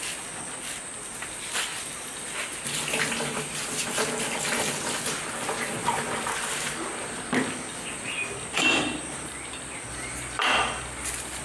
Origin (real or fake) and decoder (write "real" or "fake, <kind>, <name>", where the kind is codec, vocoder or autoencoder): real